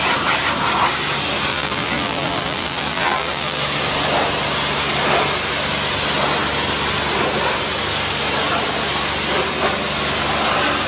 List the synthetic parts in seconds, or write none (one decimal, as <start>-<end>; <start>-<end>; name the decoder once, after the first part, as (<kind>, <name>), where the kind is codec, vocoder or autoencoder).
1.5-3.6 (vocoder, BigVGAN v2)